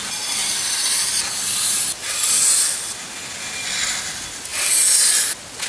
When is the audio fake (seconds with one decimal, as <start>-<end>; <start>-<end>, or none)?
none